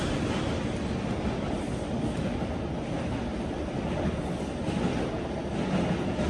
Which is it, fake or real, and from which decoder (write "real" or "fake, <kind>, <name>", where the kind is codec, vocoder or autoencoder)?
real